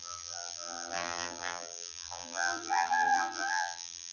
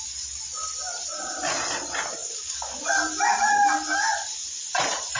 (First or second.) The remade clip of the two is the first